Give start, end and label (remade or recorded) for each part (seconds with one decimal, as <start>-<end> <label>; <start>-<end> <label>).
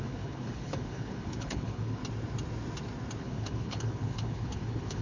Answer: 0.0-2.0 remade; 2.0-3.2 recorded; 3.2-5.0 remade